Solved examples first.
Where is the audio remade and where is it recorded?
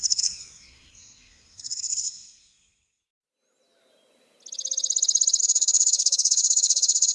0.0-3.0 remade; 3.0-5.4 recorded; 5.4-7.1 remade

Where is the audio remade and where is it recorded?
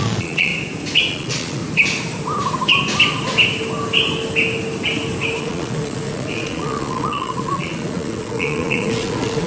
0.0-0.5 remade; 0.5-1.1 recorded; 1.1-1.6 remade; 1.6-5.4 recorded; 5.4-9.5 remade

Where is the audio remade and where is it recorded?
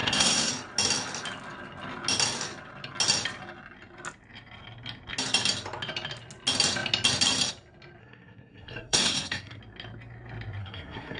0.0-0.5 remade; 0.5-8.0 recorded; 8.0-9.6 remade; 9.6-10.6 recorded; 10.6-11.2 remade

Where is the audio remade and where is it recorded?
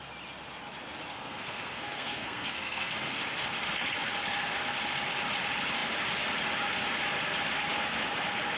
0.0-1.1 recorded; 1.1-3.2 remade; 3.2-8.6 recorded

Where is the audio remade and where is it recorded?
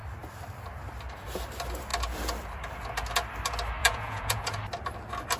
0.0-3.8 recorded; 3.8-4.4 remade; 4.4-5.4 recorded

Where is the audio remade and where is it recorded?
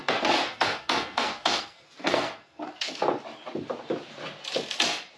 0.0-3.1 remade; 3.1-5.2 recorded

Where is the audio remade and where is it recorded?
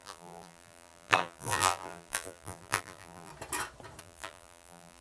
0.0-3.3 remade; 3.3-4.0 recorded; 4.0-5.0 remade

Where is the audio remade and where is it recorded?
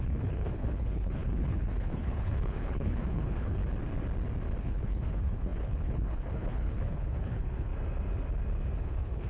0.0-3.6 remade; 3.6-4.6 recorded; 4.6-7.7 remade; 7.7-8.8 recorded; 8.8-9.3 remade